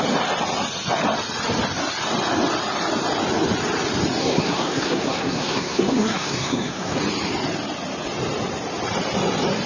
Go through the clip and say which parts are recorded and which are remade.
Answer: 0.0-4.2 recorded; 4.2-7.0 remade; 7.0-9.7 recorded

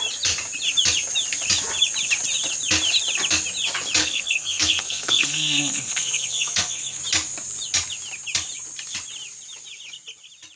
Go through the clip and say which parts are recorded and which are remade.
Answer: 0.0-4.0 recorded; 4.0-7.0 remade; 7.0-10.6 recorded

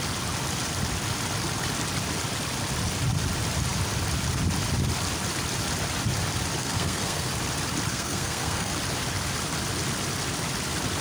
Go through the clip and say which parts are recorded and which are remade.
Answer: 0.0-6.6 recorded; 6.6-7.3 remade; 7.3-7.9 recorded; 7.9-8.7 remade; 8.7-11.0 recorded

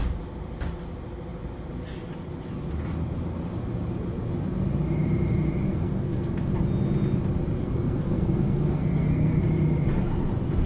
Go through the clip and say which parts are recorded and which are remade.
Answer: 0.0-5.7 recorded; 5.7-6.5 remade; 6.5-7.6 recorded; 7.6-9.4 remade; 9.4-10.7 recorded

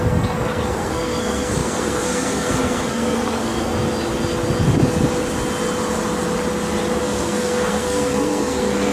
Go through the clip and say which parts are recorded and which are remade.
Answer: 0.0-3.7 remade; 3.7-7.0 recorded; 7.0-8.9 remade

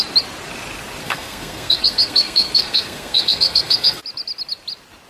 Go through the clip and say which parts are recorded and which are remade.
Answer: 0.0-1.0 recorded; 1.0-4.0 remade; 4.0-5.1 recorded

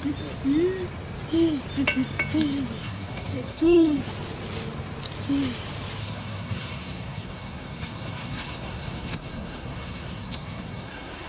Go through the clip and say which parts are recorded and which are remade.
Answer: 0.0-2.8 recorded; 2.8-4.0 remade; 4.0-6.0 recorded; 6.0-11.3 remade